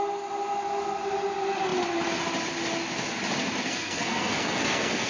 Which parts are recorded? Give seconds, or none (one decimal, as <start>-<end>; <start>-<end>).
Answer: 0.0-3.6

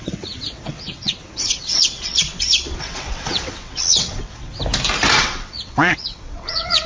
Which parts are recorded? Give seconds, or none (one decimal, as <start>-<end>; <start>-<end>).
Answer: 4.6-5.2